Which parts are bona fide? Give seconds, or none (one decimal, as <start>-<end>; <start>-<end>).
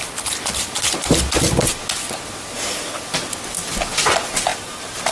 0.0-4.5